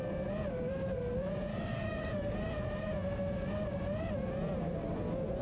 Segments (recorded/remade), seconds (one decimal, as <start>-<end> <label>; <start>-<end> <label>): 0.0-1.5 recorded; 1.5-2.5 remade; 2.5-5.4 recorded